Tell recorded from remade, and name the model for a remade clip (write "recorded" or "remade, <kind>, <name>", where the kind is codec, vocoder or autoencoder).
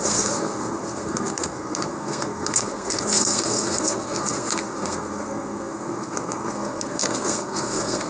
remade, codec, SNAC